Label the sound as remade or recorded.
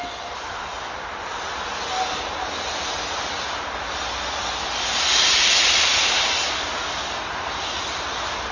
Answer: recorded